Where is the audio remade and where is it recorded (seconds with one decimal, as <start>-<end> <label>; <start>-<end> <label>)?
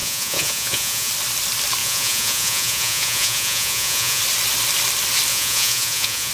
0.0-1.1 remade; 1.1-1.8 recorded; 1.8-4.2 remade; 4.2-5.3 recorded; 5.3-6.3 remade